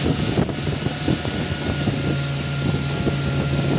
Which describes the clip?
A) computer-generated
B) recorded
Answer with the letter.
B